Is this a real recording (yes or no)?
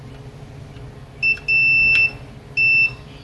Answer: yes